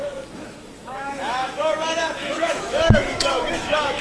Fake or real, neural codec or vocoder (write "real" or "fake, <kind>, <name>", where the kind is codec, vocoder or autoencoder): fake, autoencoder, DAC-VAE